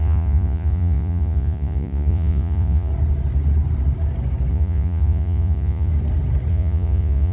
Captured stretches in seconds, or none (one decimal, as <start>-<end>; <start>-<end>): 2.9-4.5; 5.9-6.5